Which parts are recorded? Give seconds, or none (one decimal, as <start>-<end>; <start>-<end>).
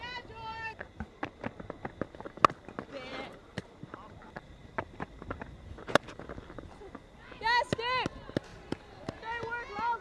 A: 0.0-0.5; 1.2-3.1; 6.2-8.5; 9.1-10.0